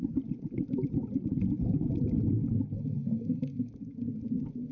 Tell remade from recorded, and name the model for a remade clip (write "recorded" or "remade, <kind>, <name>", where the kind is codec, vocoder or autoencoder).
recorded